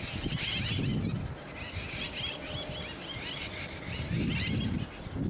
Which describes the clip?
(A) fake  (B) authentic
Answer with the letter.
B